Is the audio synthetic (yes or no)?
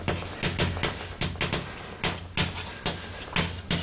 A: no